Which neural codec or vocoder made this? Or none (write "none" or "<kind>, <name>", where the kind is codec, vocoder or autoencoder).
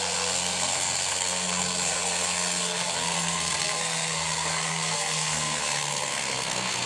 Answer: codec, SNAC